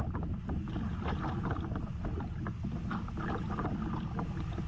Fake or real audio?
real